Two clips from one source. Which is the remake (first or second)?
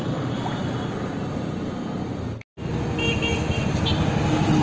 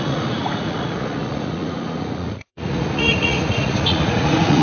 second